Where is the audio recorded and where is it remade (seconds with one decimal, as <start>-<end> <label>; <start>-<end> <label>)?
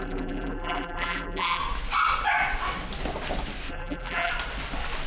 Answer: 0.0-1.6 remade; 1.6-3.7 recorded; 3.7-4.3 remade; 4.3-5.1 recorded